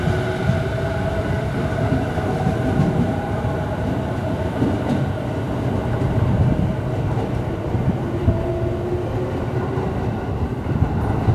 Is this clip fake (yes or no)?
no